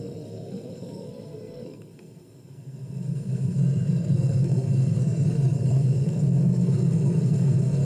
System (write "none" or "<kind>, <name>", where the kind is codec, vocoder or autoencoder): codec, SNAC